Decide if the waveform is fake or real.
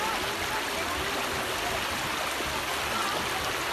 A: real